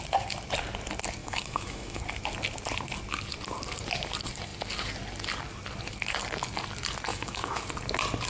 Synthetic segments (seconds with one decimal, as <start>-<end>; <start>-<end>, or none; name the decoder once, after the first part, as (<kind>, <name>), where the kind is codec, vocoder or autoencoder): 1.2-2.0 (autoencoder, DAC-VAE); 7.1-7.6